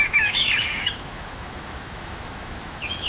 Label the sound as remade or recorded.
remade